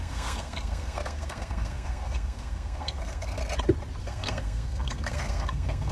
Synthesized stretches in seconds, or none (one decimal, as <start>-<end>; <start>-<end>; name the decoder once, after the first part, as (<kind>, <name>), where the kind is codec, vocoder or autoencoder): 0.0-3.4 (codec, SNAC); 4.0-5.9